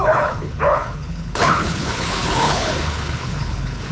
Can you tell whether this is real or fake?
fake